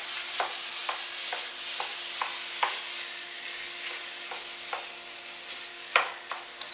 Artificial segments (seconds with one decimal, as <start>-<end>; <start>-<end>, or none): 2.6-4.3; 5.7-6.3